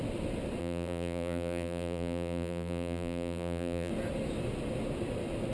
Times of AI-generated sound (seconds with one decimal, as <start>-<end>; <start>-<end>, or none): 0.6-3.9